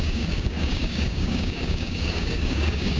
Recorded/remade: remade